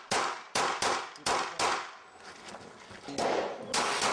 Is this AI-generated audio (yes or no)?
no